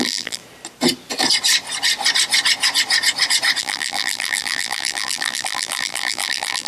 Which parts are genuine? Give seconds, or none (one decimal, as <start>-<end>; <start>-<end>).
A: 0.4-3.6